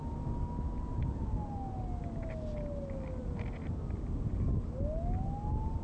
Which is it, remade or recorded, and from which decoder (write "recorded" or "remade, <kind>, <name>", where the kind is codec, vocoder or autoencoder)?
recorded